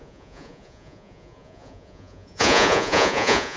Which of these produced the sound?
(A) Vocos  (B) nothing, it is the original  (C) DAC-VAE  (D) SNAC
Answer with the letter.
A